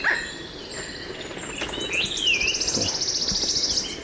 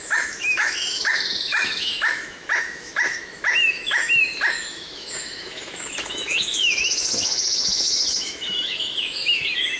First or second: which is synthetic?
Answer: second